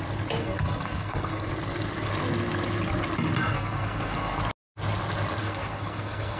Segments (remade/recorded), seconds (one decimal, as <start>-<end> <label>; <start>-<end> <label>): 0.0-0.4 recorded; 0.4-1.5 remade; 1.5-3.5 recorded; 3.5-4.4 remade; 4.4-5.4 recorded; 5.4-6.4 remade